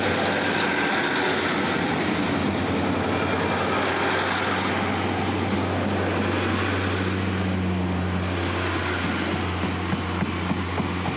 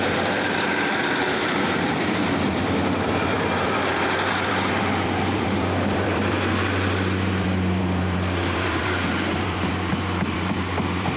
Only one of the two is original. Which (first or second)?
first